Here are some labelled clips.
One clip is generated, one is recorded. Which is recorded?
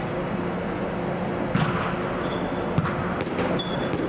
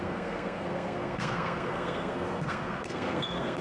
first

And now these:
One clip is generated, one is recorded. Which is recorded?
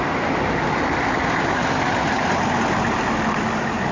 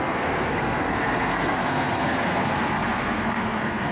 first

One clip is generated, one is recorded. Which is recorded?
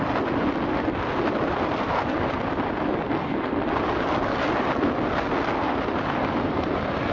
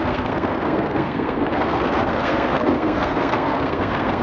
first